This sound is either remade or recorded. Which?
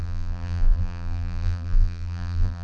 remade